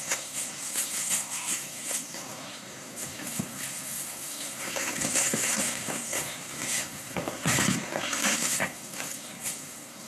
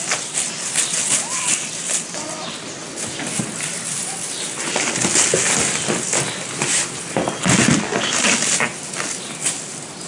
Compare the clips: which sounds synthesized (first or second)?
first